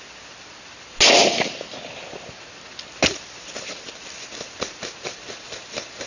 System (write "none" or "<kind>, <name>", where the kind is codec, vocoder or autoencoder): none